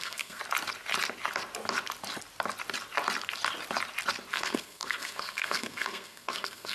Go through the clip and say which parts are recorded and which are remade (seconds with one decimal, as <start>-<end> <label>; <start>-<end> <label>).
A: 0.0-0.4 remade; 0.4-4.3 recorded; 4.3-6.7 remade